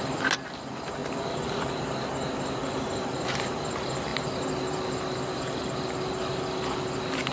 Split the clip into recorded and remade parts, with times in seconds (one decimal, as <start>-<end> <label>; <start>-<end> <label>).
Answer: 0.0-7.3 recorded